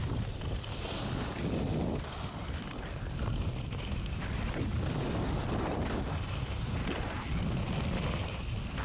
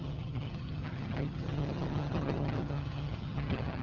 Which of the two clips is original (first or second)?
first